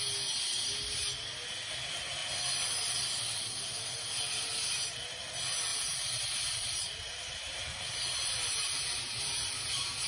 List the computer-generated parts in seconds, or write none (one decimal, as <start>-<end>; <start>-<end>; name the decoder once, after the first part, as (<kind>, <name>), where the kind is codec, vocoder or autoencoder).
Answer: 5.7-10.1 (vocoder, BigVGAN v2)